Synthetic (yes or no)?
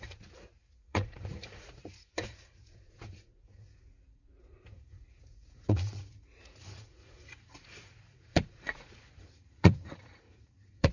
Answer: yes